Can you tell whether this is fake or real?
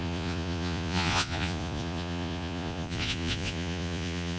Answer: fake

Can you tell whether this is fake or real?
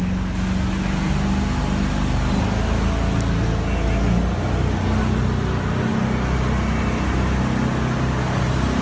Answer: real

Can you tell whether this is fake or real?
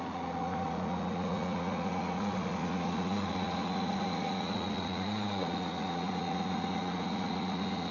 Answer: fake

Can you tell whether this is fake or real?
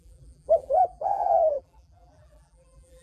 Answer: fake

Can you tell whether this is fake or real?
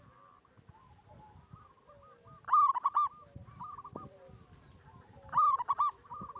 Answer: real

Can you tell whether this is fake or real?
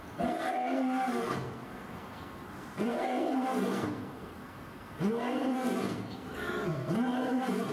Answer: fake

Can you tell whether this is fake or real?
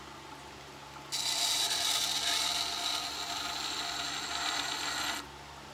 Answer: real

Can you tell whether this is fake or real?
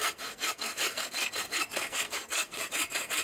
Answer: fake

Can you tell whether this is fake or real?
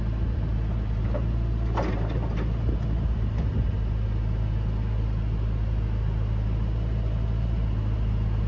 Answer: real